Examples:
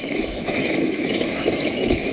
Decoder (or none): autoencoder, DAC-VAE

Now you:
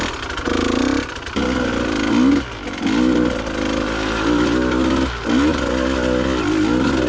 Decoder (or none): none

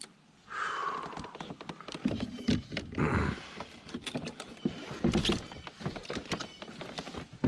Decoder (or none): none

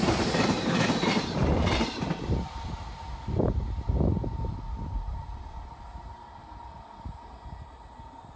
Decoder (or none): none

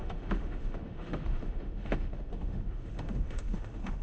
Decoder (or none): autoencoder, DAC-VAE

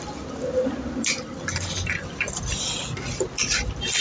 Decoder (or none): none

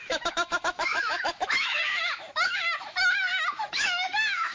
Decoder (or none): autoencoder, DAC-VAE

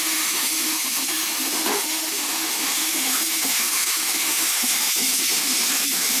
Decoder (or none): autoencoder, DAC-VAE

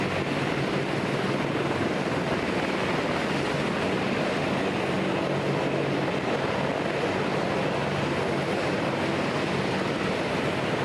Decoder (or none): none